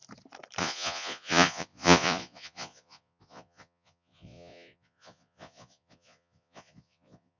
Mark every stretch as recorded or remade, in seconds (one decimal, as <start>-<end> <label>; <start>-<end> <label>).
0.0-0.6 recorded; 0.6-7.4 remade